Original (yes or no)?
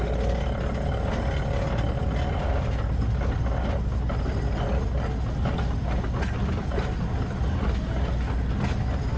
yes